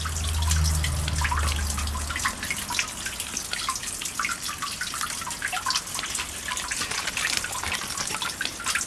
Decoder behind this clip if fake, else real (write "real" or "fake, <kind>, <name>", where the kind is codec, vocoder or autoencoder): real